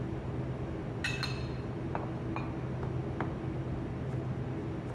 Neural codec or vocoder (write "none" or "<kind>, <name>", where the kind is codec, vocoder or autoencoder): none